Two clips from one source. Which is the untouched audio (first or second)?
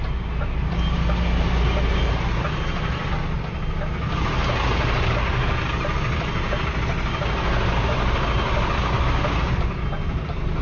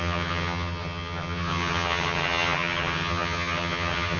first